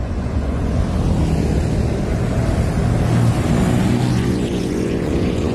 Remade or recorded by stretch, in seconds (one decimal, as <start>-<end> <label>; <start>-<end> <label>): 0.0-0.8 remade; 0.8-4.1 recorded; 4.1-5.5 remade